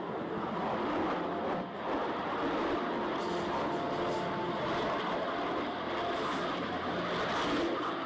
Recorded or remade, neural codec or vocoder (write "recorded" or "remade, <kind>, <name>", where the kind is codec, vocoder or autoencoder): recorded